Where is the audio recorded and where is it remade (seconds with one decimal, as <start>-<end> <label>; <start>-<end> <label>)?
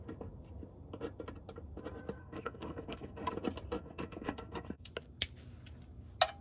0.0-2.2 recorded; 2.2-3.3 remade; 3.3-3.8 recorded; 3.8-4.9 remade; 4.9-6.4 recorded